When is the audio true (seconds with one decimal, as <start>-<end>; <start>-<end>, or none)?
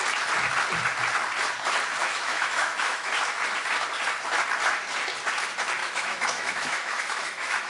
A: 0.0-2.0; 3.1-5.8